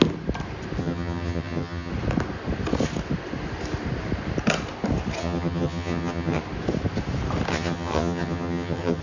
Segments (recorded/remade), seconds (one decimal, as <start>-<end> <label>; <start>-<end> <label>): 0.0-0.8 recorded; 0.8-1.9 remade; 1.9-5.2 recorded; 5.2-6.4 remade; 6.4-7.5 recorded; 7.5-9.0 remade